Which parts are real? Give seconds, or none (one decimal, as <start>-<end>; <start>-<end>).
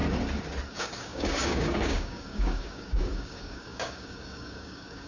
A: 0.0-0.7